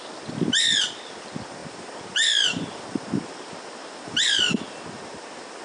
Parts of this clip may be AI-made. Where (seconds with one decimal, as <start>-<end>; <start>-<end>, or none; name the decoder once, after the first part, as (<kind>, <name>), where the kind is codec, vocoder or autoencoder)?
none